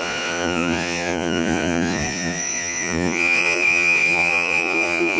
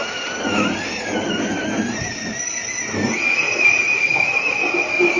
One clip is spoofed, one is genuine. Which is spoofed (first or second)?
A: first